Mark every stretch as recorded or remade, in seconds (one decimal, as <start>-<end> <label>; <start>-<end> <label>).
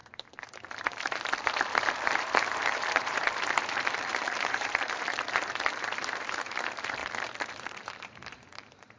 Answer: 0.0-7.0 remade; 7.0-7.5 recorded; 7.5-9.0 remade